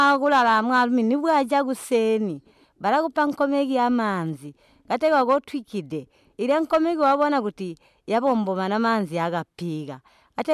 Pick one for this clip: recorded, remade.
recorded